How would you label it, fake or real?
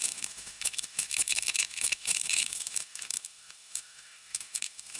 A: fake